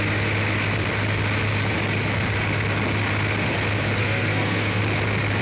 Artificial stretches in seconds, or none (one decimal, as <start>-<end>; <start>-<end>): 4.0-4.8